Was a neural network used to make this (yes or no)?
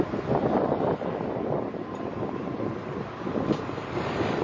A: yes